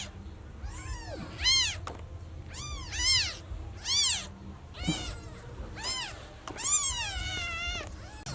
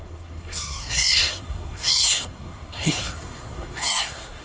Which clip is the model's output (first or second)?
second